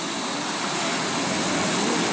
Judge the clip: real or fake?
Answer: real